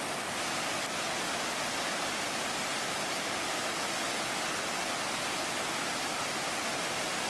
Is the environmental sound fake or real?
real